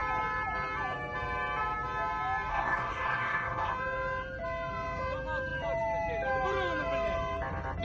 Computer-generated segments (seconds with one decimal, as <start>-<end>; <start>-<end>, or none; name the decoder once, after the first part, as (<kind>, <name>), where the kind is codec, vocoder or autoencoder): 2.5-3.7 (codec, SNAC)